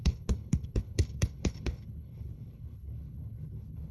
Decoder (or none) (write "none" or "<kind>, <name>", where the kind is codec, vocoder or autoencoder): codec, HILCodec